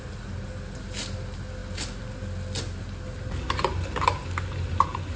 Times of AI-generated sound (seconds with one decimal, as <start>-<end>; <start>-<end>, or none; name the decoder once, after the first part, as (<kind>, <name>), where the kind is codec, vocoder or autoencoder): none